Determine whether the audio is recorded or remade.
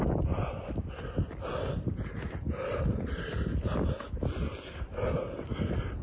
recorded